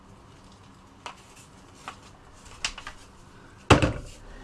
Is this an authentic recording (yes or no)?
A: yes